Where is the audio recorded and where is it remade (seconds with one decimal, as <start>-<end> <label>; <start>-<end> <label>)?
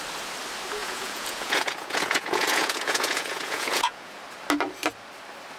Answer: 0.0-0.8 recorded; 0.8-4.2 remade; 4.2-5.6 recorded